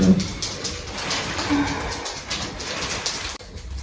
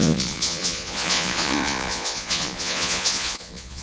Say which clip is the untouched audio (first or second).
first